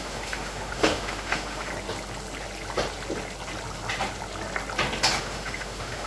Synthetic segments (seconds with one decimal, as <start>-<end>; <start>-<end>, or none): 0.0-1.7; 5.2-6.1